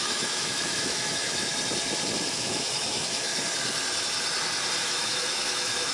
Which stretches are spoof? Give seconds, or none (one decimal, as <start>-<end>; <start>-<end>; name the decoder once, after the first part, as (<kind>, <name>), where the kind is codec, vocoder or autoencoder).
0.0-1.5 (autoencoder, DAC-VAE); 2.3-3.3; 4.8-5.9

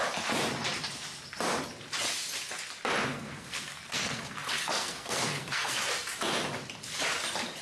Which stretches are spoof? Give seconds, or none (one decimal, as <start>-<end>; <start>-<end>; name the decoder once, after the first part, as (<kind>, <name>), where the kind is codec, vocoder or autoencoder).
3.1-5.9 (codec, SNAC)